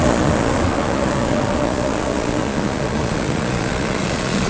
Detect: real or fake fake